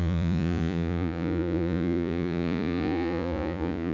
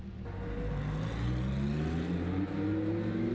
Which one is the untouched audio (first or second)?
second